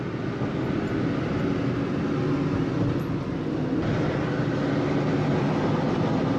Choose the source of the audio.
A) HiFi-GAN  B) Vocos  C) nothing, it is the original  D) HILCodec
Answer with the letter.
C